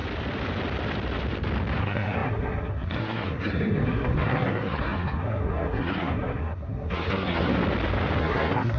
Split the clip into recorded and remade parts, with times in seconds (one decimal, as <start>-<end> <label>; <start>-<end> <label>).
0.0-1.8 recorded; 1.8-7.5 remade; 7.5-8.2 recorded; 8.2-8.8 remade